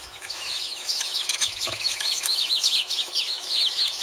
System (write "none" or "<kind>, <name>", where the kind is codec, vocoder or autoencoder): autoencoder, DAC-VAE